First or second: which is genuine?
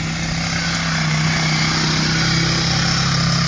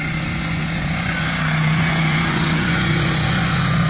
first